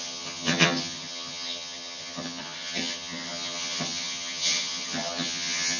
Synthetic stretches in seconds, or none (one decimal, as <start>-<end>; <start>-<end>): 0.0-5.8